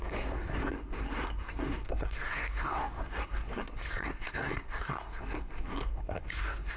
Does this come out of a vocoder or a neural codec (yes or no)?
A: yes